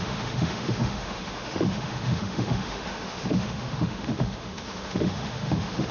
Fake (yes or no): yes